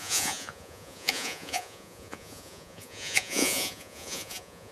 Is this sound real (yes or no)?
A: no